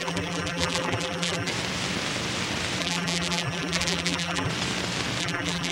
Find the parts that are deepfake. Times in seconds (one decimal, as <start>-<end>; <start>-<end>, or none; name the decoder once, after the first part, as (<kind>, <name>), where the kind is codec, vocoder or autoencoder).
0.0-1.5 (vocoder, BigVGAN v2); 2.8-4.5; 5.2-5.7